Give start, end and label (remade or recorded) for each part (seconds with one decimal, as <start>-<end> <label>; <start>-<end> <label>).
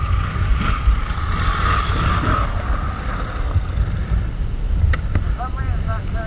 0.0-6.3 remade